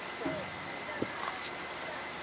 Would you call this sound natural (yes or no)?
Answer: yes